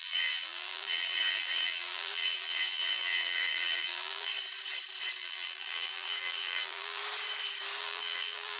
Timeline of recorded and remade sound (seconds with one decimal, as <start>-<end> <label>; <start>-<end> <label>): 0.0-4.3 remade; 4.3-5.2 recorded; 5.2-7.0 remade; 7.0-7.8 recorded; 7.8-8.6 remade